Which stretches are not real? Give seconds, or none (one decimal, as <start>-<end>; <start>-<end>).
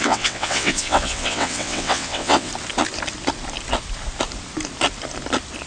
0.0-2.5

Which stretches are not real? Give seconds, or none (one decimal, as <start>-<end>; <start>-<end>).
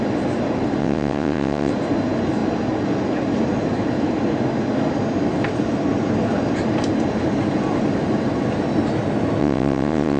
0.8-1.7; 9.4-10.2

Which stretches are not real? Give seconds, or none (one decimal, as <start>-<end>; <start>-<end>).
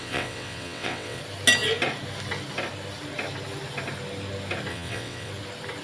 0.0-1.2; 4.7-5.3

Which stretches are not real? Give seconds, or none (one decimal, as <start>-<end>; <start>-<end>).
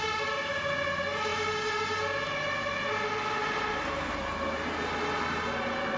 none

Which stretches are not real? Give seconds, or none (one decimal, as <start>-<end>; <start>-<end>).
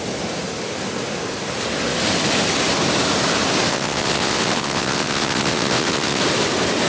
3.7-6.2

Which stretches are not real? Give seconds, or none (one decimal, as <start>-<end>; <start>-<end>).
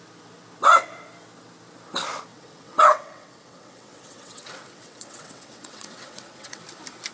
2.3-6.6